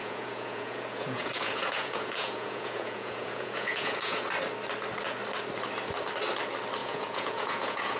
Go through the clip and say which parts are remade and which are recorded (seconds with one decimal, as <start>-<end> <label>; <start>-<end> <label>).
0.0-4.3 remade; 4.3-6.8 recorded; 6.8-8.0 remade